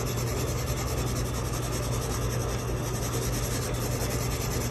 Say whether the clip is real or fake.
real